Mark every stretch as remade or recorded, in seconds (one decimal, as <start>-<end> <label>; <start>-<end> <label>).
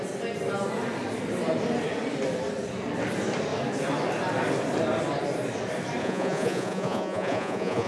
0.0-6.0 recorded; 6.0-7.9 remade